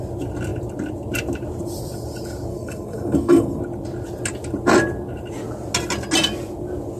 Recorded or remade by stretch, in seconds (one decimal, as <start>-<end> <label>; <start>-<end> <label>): 0.0-2.5 recorded; 2.5-3.6 remade; 3.6-7.0 recorded